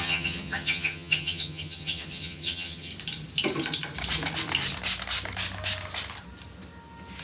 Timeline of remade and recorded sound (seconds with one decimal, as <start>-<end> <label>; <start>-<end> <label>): 0.0-2.9 remade; 2.9-7.2 recorded